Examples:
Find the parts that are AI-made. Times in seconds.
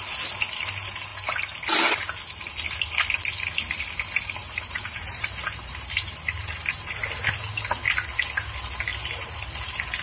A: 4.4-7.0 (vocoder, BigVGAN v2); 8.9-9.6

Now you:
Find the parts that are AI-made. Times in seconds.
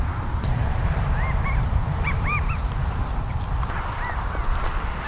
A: 0.6-3.7 (vocoder, BigVGAN v2)